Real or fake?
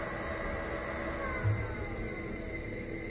real